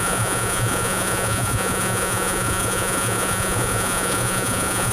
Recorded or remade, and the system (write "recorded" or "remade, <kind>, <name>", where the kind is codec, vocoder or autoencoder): remade, vocoder, Vocos